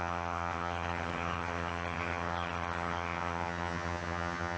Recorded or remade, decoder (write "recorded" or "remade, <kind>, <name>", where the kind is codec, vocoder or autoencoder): remade, vocoder, HiFi-GAN